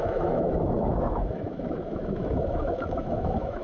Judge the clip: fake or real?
fake